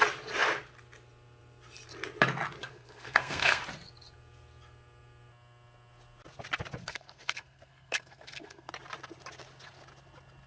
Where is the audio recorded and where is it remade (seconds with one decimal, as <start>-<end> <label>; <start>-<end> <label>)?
0.0-2.6 recorded; 2.6-3.6 remade; 3.6-6.8 recorded; 6.8-8.7 remade; 8.7-10.5 recorded